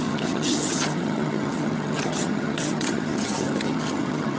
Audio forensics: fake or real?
fake